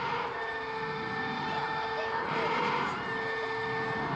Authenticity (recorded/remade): recorded